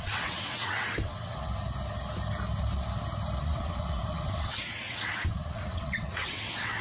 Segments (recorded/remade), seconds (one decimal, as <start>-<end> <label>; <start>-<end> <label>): 0.0-1.5 remade; 1.5-3.4 recorded; 3.4-6.8 remade